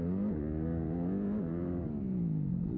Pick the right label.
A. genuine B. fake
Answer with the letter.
A